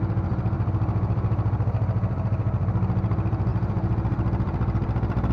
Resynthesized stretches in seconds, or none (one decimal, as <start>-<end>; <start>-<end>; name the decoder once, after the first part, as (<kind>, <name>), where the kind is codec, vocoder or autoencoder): 0.0-5.3 (vocoder, BigVGAN v2)